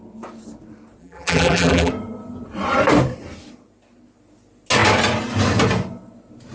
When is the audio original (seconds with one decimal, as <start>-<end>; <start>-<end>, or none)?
0.0-1.0; 1.9-6.5